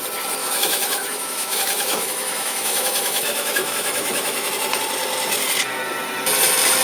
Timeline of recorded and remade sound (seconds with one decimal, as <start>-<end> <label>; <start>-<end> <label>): 0.0-0.4 recorded; 0.4-4.5 remade; 4.5-6.8 recorded